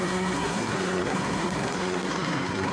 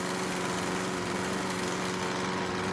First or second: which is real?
second